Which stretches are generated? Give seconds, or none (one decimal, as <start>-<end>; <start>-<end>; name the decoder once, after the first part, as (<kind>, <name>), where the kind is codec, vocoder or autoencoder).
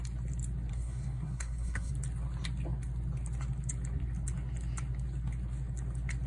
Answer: 0.7-1.9 (codec, SNAC)